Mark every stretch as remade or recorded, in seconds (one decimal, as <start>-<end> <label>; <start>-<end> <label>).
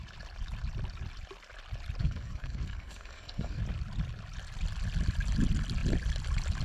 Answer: 0.0-2.0 recorded; 2.0-3.6 remade; 3.6-6.6 recorded